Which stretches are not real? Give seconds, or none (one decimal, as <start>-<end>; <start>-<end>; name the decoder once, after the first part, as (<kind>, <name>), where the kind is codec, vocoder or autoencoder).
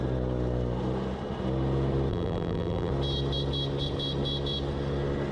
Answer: 2.1-2.9 (vocoder, BigVGAN v2)